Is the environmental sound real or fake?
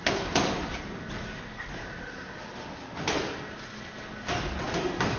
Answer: real